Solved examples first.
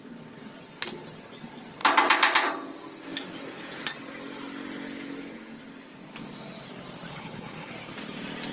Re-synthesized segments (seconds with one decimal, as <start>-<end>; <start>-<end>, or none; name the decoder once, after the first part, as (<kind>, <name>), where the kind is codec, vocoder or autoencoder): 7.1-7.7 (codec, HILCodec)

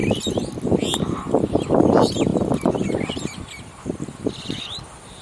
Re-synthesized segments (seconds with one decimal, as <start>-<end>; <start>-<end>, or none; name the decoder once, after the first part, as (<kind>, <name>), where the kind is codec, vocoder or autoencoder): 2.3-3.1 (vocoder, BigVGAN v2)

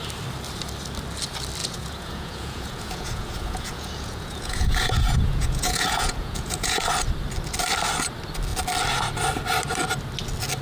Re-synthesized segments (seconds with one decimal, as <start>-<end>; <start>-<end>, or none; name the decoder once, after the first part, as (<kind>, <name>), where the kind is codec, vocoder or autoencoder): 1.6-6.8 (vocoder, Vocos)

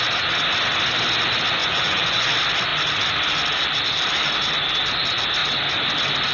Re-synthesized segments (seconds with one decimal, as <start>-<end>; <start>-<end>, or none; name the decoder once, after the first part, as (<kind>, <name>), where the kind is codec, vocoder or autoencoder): 1.6-2.3 (vocoder, Vocos)

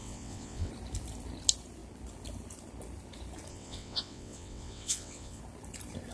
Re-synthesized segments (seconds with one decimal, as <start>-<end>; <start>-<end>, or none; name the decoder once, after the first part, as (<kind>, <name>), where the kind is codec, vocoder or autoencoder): 0.0-0.7 (vocoder, WaveNeXt); 3.5-5.4

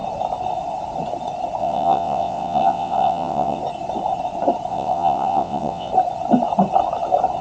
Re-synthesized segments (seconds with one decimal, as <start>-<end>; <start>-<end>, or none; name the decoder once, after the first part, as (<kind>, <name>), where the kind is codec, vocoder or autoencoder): 1.6-3.6 (vocoder, WaveNeXt); 4.7-5.9